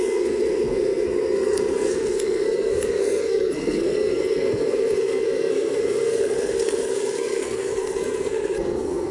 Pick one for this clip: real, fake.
fake